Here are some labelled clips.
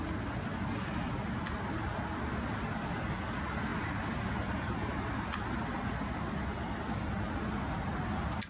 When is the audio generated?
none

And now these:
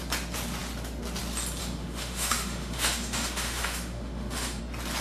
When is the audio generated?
1.6-4.6